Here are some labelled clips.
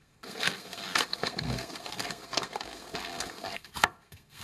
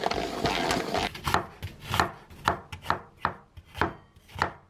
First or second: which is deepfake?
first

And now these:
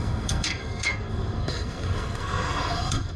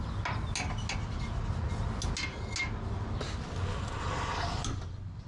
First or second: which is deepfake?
first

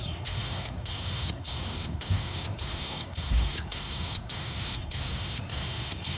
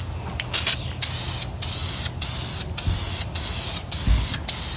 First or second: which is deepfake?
first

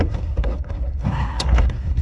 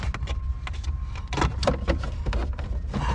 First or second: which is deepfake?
first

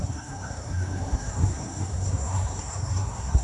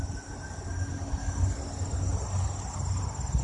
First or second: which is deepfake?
first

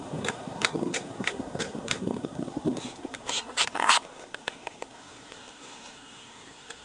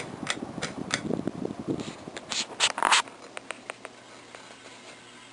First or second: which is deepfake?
first